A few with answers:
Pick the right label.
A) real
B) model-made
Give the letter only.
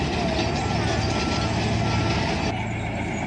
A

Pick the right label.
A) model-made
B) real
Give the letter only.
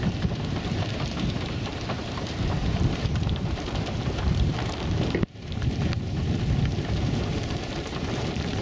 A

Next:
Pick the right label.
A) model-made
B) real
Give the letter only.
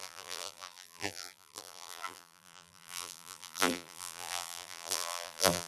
A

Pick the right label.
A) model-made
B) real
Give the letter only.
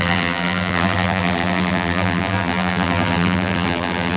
A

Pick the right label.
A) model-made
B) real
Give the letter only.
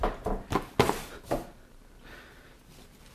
B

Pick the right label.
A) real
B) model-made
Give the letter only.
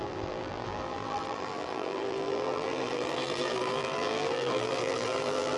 B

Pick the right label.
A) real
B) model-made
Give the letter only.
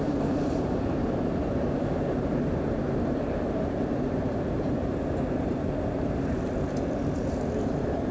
B